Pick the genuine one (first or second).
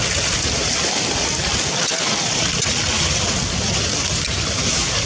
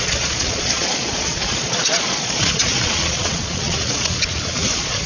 first